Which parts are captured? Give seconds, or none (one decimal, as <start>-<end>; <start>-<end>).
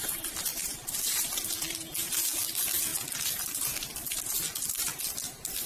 0.0-5.7